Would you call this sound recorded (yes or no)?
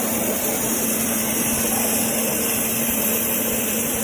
no